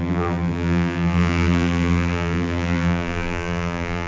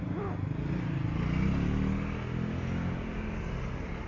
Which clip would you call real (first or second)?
second